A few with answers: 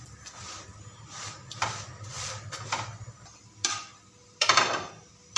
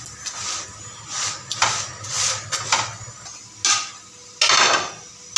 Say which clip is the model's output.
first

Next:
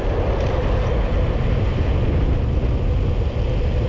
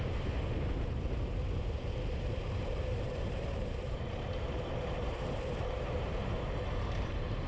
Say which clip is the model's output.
second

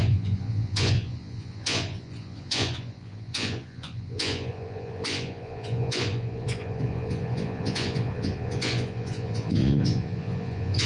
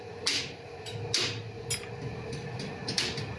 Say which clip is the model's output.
first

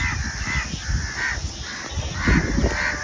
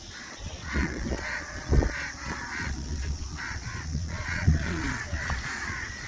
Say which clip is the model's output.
second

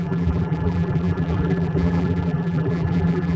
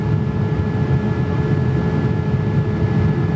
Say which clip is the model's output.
first